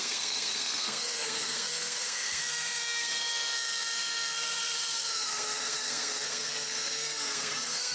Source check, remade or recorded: remade